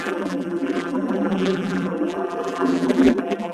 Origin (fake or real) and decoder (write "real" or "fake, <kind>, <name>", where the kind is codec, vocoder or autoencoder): fake, vocoder, BigVGAN v2